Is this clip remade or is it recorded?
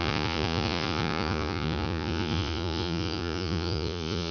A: remade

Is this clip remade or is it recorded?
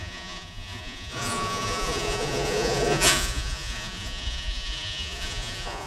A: remade